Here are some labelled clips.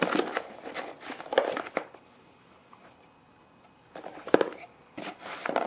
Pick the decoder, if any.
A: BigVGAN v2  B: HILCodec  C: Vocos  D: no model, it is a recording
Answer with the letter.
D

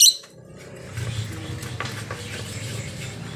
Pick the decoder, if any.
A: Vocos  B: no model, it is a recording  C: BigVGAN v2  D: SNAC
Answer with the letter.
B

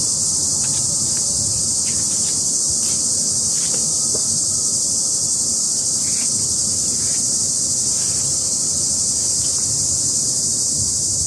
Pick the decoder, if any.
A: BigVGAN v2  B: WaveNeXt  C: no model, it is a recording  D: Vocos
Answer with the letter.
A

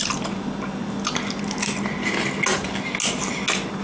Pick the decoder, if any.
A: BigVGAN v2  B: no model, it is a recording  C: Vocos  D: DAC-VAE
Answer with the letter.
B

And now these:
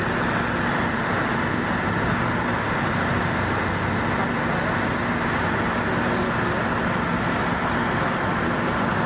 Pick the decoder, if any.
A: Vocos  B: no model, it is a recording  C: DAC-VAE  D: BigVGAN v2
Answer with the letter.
B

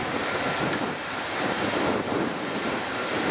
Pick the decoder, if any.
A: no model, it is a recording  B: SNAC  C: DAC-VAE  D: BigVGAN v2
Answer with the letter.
D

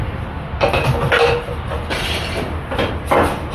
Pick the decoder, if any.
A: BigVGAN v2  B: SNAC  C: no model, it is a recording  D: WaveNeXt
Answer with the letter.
A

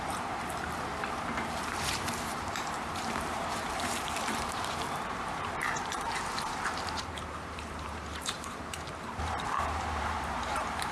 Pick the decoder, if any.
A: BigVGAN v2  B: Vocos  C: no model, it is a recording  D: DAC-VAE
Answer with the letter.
A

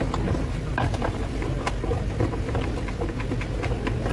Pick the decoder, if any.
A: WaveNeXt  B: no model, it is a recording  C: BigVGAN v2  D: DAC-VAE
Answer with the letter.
B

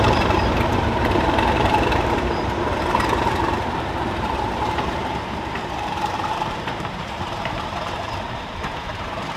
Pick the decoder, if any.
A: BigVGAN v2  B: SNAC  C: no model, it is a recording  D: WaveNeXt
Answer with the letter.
A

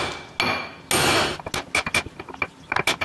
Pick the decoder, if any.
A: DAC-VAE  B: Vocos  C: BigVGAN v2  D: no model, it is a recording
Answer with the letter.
D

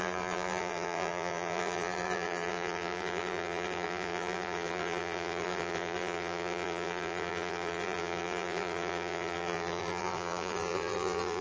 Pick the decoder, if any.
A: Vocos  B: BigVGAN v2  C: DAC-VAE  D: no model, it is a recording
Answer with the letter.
B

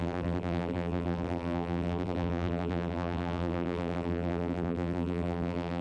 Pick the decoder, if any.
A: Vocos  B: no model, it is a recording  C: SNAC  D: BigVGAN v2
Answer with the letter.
D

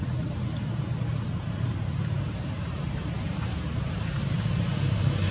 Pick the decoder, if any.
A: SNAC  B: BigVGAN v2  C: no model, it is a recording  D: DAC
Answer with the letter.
B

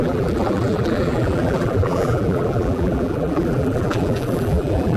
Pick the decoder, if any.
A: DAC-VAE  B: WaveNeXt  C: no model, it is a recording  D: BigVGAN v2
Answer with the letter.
D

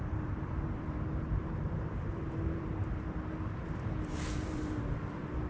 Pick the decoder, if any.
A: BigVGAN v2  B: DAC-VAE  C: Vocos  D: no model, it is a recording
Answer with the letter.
A